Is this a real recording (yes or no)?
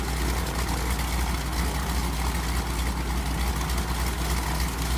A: yes